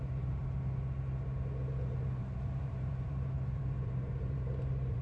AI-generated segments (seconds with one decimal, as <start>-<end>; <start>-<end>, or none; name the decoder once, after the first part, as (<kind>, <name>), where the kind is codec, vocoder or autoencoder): 0.0-0.4 (vocoder, BigVGAN v2); 1.9-5.0